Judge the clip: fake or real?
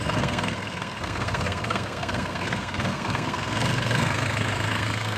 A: fake